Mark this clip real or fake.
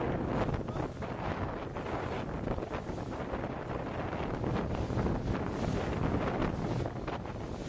real